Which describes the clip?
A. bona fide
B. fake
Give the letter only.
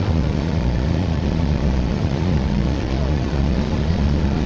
B